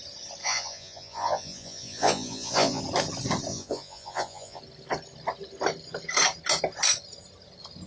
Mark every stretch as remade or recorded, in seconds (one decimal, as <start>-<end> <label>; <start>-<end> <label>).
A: 0.0-0.4 recorded; 0.4-2.8 remade; 2.8-3.5 recorded; 3.5-4.6 remade; 4.6-7.9 recorded